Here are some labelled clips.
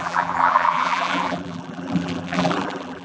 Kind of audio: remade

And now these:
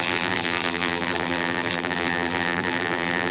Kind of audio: remade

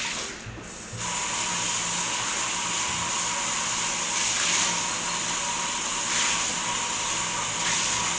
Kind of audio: recorded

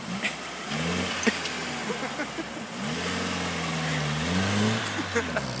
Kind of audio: recorded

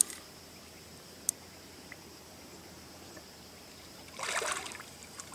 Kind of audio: remade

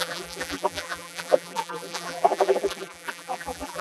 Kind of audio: remade